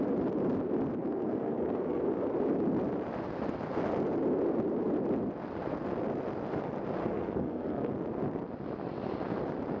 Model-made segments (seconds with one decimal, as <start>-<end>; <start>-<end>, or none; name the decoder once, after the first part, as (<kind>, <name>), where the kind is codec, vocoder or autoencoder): 1.0-2.0 (codec, SNAC); 7.0-7.9